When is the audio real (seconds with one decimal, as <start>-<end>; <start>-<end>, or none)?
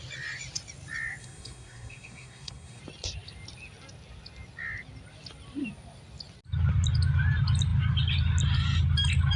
0.0-1.2; 2.8-9.4